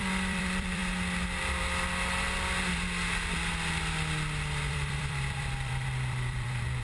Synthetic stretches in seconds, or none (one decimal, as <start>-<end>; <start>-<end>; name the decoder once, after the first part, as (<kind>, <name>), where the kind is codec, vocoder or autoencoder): 0.0-0.8 (vocoder, BigVGAN v2); 4.7-6.8

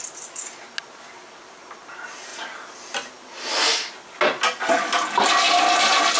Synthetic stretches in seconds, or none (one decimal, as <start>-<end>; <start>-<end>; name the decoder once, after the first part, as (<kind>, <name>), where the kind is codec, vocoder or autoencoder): 0.0-0.6 (vocoder, BigVGAN v2)

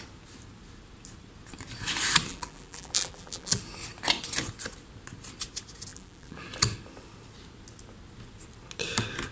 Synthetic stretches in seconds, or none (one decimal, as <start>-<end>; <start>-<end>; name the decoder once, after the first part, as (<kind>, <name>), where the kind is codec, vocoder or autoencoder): 2.3-3.6 (vocoder, BigVGAN v2); 5.9-6.4

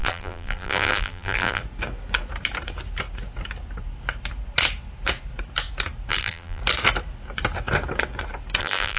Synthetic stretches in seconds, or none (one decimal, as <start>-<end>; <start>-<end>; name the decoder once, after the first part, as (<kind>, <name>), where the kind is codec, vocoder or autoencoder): 0.0-1.6 (vocoder, BigVGAN v2); 6.1-6.6; 8.6-9.0

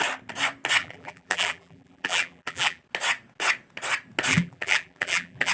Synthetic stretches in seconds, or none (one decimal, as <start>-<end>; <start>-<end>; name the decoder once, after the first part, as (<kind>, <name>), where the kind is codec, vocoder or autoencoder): 0.8-2.8 (vocoder, BigVGAN v2); 4.3-5.5

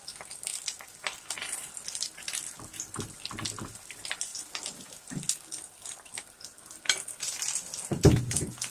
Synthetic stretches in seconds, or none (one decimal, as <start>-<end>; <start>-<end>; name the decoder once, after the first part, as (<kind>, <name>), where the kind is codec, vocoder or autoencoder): 0.0-0.5 (vocoder, BigVGAN v2); 1.4-4.3; 8.2-8.7

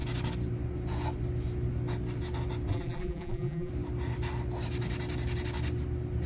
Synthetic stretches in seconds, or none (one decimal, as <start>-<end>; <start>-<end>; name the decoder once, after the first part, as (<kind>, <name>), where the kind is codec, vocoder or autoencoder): 2.7-3.7 (vocoder, BigVGAN v2)

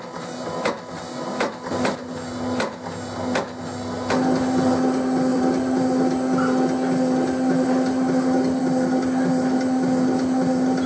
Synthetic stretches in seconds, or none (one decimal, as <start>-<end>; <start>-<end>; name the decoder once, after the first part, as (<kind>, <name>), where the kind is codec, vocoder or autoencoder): 5.3-6.0 (vocoder, BigVGAN v2); 7.5-8.6